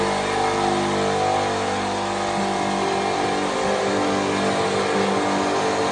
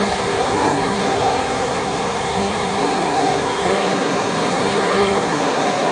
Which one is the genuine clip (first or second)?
first